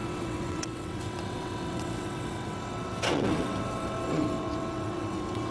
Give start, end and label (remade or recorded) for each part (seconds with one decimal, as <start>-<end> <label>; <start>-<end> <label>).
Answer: 0.0-5.5 remade